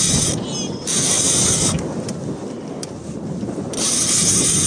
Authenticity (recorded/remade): recorded